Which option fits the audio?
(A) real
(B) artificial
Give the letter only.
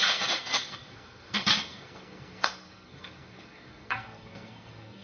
B